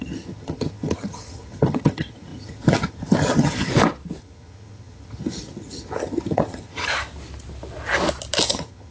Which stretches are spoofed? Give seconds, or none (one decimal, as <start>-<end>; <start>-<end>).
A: 0.0-3.7; 4.2-6.9; 8.5-8.9